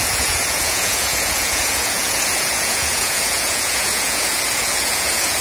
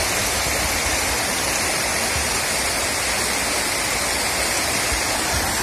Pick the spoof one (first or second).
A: first